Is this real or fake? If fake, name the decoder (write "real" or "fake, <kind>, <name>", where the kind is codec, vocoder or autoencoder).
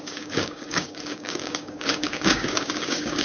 fake, codec, DAC